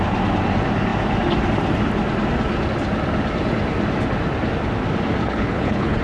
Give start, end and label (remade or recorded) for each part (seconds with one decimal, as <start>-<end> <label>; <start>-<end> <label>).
0.0-5.2 recorded; 5.2-6.0 remade